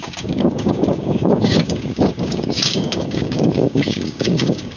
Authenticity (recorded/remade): remade